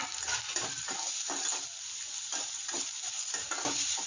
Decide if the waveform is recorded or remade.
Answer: recorded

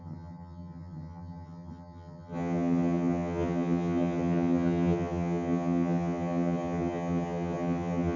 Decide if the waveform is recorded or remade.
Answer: remade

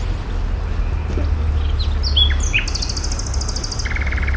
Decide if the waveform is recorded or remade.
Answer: recorded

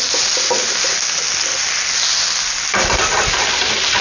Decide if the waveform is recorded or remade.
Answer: recorded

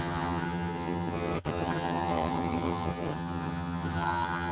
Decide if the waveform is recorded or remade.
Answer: remade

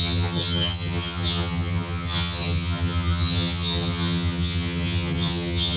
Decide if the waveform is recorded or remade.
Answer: remade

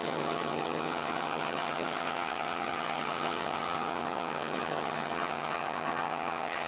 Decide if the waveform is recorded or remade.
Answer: remade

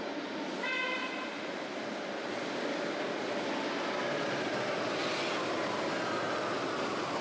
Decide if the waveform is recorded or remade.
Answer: recorded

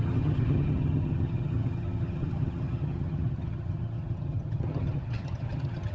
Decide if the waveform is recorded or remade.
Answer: remade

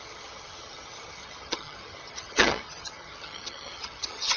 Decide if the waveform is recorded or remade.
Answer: remade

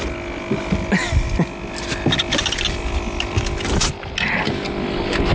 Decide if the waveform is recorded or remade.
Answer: recorded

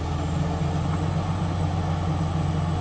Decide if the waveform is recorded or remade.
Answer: recorded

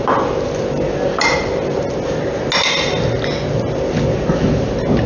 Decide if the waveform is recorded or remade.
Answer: recorded